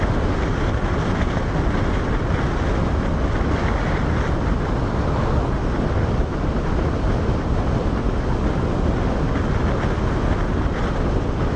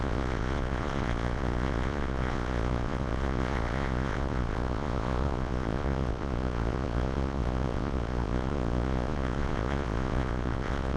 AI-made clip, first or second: second